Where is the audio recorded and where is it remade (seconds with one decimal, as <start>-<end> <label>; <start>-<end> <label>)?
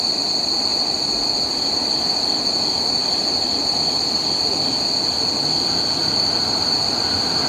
0.0-0.7 recorded; 0.7-2.2 remade; 2.2-3.0 recorded; 3.0-4.5 remade; 4.5-6.0 recorded; 6.0-7.5 remade